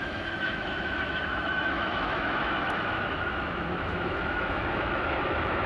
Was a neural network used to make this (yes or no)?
yes